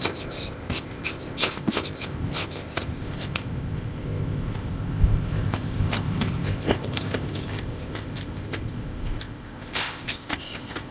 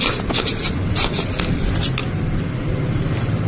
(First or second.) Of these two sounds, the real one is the second